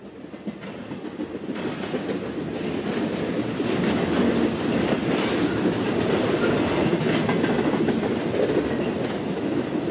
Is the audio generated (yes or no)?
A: no